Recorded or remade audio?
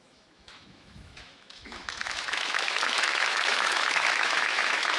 remade